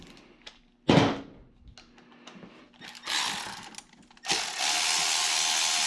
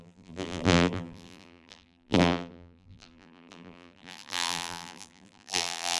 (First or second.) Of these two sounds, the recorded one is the first